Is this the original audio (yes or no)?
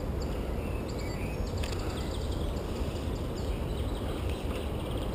yes